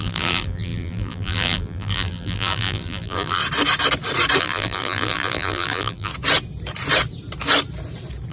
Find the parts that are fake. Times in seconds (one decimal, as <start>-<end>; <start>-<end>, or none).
0.0-3.4; 4.4-6.1